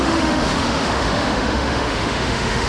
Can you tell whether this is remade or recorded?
remade